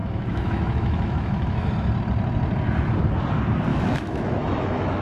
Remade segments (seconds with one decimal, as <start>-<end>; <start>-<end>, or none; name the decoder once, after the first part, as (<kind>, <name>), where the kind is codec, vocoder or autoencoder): 0.0-1.7 (autoencoder, DAC-VAE); 3.7-5.0